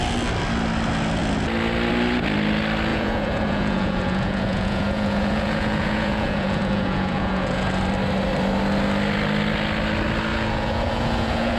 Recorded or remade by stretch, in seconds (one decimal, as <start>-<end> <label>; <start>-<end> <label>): 0.0-2.9 recorded; 2.9-7.8 remade; 7.8-10.3 recorded; 10.3-11.6 remade